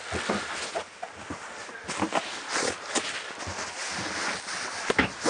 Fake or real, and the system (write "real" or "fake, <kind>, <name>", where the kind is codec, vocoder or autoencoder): real